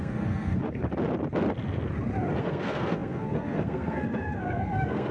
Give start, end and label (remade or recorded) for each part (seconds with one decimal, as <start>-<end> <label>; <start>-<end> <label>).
0.0-0.6 remade; 0.6-2.4 recorded; 2.4-5.1 remade